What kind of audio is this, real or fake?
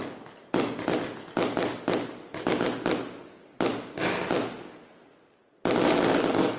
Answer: real